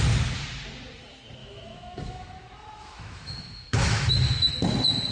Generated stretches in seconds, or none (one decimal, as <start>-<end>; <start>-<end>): 1.4-4.5